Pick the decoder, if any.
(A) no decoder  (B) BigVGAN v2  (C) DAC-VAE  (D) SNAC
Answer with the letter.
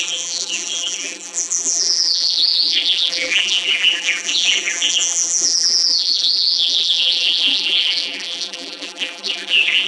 B